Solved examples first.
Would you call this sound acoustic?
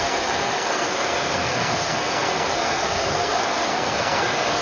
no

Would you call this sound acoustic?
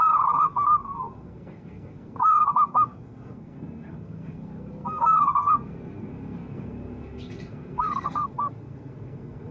no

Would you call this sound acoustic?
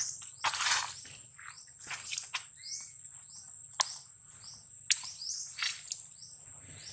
yes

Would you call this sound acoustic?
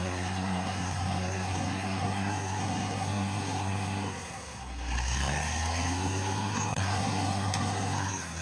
no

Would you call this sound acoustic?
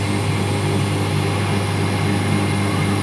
yes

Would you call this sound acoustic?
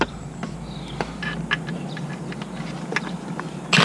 yes